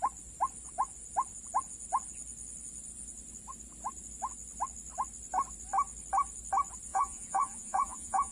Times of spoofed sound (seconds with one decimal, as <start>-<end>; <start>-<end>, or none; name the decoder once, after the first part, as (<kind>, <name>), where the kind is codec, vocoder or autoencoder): 6.9-8.3 (vocoder, Vocos)